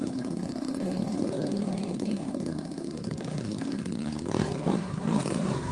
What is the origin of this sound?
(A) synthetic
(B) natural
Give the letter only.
A